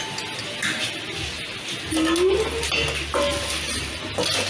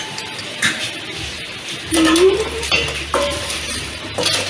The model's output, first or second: second